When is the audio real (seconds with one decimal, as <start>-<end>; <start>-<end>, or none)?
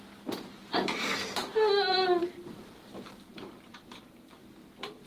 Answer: 4.4-5.1